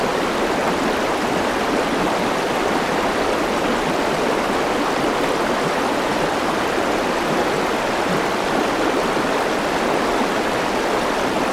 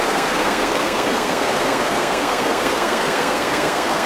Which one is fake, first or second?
second